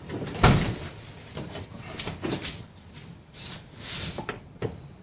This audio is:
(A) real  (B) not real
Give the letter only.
A